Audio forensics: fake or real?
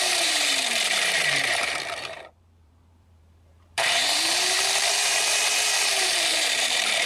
fake